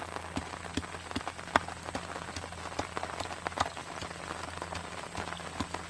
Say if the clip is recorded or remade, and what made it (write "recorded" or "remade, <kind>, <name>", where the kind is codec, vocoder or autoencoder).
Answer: recorded